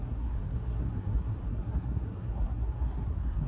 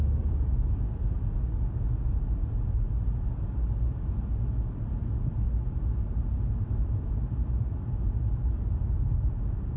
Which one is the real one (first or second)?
second